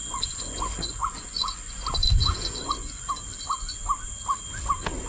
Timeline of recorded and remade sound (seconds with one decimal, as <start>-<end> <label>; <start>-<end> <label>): 0.0-3.1 remade; 3.1-5.1 recorded